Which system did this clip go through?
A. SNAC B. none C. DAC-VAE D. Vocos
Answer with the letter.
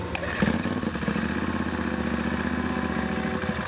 B